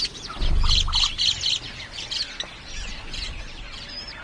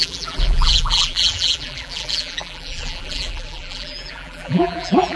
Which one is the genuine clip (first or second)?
first